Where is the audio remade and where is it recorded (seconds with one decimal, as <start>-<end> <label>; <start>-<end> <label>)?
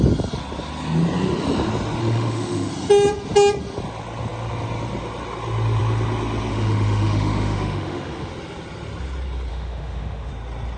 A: 0.0-2.0 recorded; 2.0-2.7 remade; 2.7-6.5 recorded; 6.5-8.3 remade; 8.3-9.5 recorded; 9.5-10.3 remade; 10.3-10.8 recorded